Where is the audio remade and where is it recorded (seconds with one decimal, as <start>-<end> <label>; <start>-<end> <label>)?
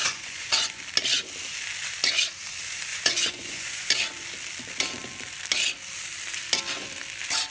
0.0-0.8 remade; 0.8-2.9 recorded; 2.9-3.9 remade; 3.9-7.5 recorded